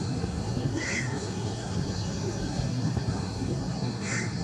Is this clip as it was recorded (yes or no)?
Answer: no